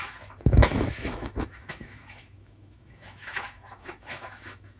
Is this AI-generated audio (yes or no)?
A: yes